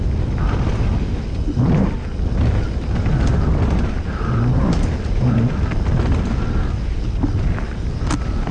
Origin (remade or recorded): recorded